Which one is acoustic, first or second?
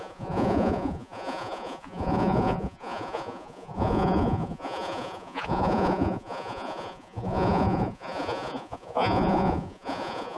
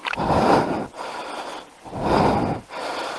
second